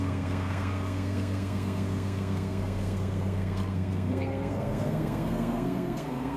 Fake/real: fake